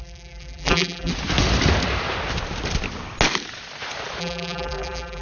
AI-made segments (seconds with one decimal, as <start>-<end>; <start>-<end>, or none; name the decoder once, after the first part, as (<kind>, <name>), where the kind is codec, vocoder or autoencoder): 0.0-1.1 (vocoder, BigVGAN v2); 4.2-5.2